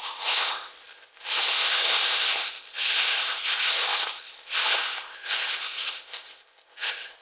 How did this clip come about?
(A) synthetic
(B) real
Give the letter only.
A